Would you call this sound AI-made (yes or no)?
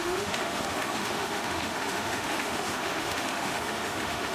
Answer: yes